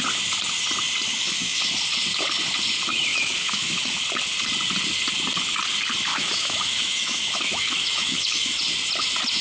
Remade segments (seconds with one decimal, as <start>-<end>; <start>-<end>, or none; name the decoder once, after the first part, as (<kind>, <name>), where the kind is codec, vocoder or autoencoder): 1.1-1.7 (autoencoder, DAC-VAE); 3.1-4.0; 6.1-8.6